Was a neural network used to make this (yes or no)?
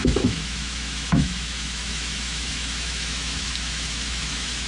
yes